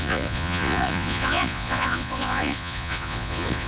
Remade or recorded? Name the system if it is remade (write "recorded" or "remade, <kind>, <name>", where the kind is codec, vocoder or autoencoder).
remade, vocoder, Vocos